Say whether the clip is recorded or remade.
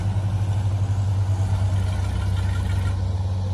recorded